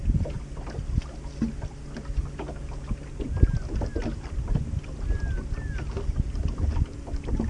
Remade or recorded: recorded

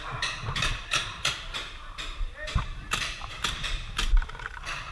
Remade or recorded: remade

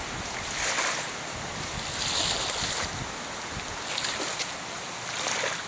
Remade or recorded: recorded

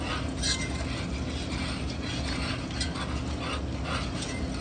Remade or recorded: recorded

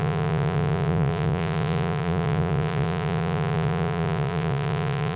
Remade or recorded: remade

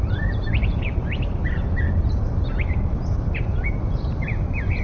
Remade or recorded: remade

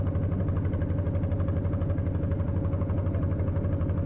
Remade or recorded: recorded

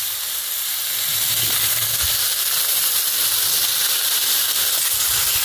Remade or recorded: recorded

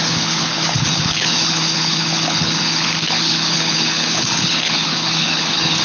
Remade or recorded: remade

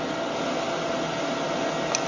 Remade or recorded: recorded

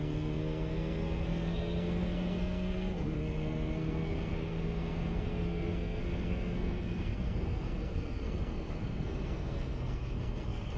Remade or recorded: remade